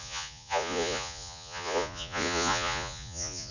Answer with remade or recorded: remade